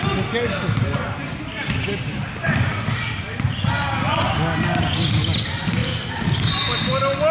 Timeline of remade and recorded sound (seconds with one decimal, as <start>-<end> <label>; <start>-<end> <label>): 0.0-7.3 recorded